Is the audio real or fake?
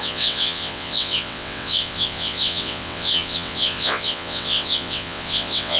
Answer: fake